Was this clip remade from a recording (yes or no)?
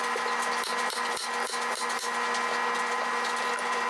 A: no